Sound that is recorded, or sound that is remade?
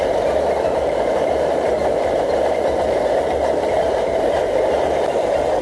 remade